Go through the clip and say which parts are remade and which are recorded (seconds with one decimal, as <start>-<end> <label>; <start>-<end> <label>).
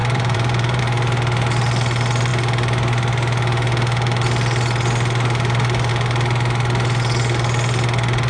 0.0-0.8 remade; 0.8-8.3 recorded